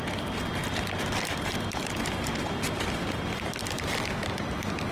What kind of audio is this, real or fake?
real